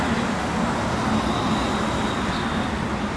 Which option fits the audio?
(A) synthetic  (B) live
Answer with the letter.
B